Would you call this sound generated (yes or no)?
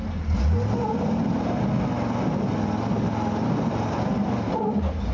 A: no